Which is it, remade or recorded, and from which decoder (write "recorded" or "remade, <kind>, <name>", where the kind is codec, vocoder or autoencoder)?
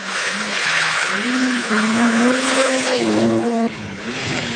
remade, codec, HILCodec